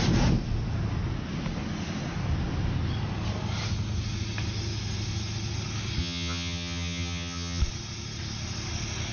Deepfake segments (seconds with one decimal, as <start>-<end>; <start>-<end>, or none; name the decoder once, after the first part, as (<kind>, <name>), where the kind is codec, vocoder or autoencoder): 6.0-7.6 (vocoder, HiFi-GAN)